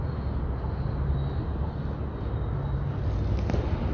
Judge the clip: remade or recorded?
recorded